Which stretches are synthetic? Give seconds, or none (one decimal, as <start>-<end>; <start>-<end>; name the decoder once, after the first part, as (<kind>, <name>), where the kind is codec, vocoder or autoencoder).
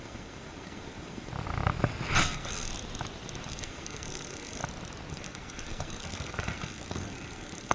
0.0-1.3 (codec, SNAC); 2.2-2.7; 3.5-4.6; 5.1-7.7